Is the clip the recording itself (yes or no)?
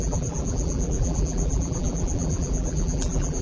no